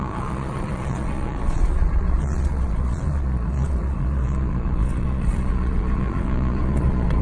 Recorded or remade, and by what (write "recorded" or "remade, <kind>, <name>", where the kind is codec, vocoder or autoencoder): remade, vocoder, Vocos